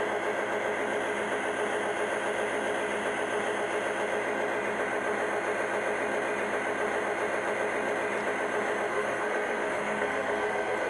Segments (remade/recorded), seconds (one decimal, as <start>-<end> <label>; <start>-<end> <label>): 0.0-8.9 recorded; 8.9-10.9 remade